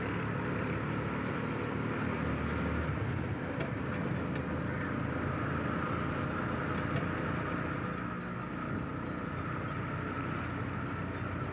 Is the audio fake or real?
real